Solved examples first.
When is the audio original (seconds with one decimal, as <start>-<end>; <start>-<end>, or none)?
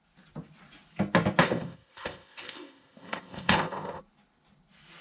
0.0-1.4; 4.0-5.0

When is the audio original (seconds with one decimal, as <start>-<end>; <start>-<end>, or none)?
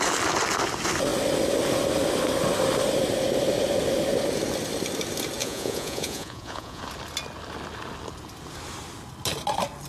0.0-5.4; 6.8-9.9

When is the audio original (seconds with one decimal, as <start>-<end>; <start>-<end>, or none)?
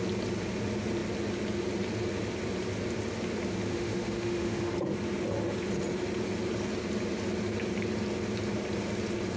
0.0-3.7; 4.7-9.4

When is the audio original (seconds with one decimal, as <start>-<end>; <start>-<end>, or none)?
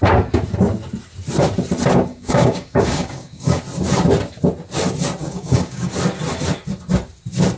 0.0-2.1; 3.6-5.2; 5.9-7.6